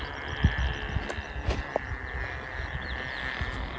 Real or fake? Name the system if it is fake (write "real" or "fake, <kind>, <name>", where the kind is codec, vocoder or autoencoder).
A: real